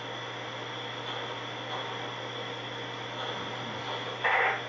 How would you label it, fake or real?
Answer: real